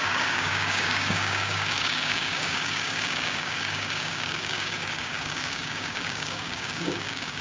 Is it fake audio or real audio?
fake